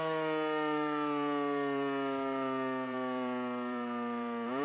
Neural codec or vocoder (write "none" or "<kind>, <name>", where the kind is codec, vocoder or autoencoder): vocoder, BigVGAN v2